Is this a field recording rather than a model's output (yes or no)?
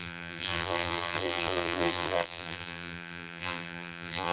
no